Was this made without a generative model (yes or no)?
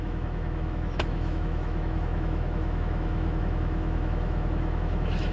no